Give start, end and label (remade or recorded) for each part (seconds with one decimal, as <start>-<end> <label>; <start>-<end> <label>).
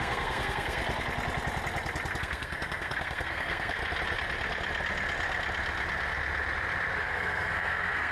0.0-0.8 remade; 0.8-2.2 recorded; 2.2-3.8 remade; 3.8-7.0 recorded; 7.0-8.1 remade